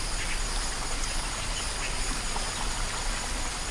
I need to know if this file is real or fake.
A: real